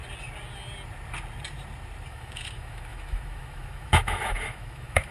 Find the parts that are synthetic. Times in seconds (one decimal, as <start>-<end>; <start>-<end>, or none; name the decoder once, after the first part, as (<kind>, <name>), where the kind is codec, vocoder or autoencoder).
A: 2.1-5.1 (autoencoder, DAC-VAE)

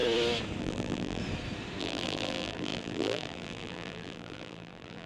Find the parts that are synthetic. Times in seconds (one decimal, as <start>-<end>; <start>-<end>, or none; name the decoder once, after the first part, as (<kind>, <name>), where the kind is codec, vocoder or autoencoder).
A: 0.6-1.2 (vocoder, BigVGAN v2); 1.8-5.1

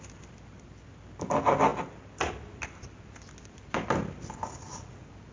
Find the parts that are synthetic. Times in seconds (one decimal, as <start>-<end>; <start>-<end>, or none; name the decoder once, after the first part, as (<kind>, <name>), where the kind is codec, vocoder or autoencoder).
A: none

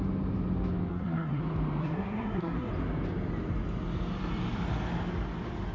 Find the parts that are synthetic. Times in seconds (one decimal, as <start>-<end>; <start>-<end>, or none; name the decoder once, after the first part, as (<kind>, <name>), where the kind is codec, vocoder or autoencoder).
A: 0.9-1.4 (codec, SNAC); 1.8-2.7

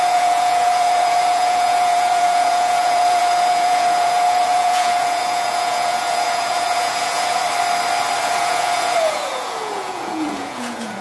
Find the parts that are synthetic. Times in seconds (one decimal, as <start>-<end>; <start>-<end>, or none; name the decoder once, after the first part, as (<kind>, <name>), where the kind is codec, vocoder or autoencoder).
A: 0.0-7.4 (vocoder, Vocos); 8.2-11.0

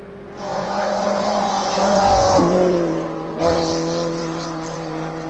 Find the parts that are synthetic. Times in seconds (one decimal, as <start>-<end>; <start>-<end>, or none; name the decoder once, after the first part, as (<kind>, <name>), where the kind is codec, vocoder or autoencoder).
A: 0.5-3.7 (vocoder, Vocos); 4.2-5.3

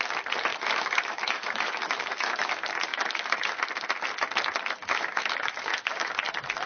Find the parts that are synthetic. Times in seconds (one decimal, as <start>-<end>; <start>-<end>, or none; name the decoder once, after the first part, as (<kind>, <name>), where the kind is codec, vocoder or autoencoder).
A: 0.5-2.5 (autoencoder, DAC-VAE); 2.9-3.7; 4.8-6.1

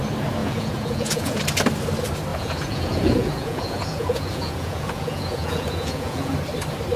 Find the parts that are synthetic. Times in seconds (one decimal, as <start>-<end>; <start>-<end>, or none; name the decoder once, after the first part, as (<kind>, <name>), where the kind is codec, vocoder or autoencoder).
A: 0.4-1.4 (vocoder, Vocos); 2.3-6.3